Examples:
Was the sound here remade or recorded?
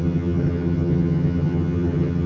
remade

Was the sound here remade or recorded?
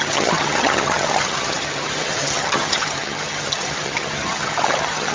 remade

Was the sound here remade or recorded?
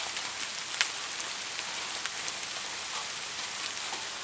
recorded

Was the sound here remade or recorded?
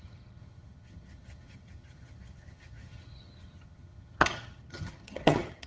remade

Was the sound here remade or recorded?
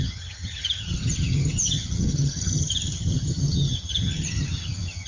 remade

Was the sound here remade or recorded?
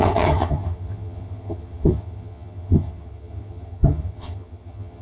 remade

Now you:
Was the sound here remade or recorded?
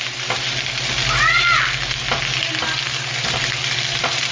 recorded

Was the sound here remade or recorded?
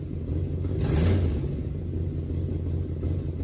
recorded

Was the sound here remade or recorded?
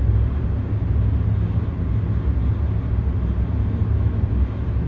recorded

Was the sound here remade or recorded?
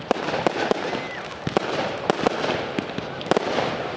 recorded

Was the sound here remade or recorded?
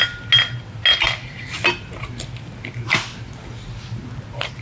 recorded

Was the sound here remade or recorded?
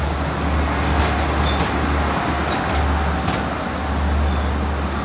recorded